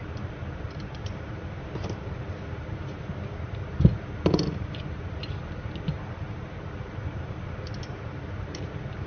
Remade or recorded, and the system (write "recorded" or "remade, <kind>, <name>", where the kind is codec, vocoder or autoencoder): remade, vocoder, BigVGAN v2